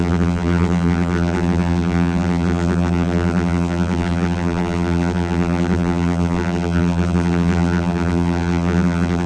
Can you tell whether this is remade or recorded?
remade